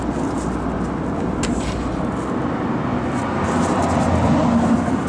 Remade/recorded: recorded